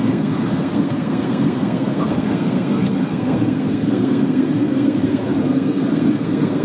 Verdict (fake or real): fake